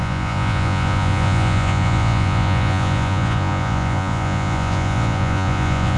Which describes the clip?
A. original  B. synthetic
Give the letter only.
B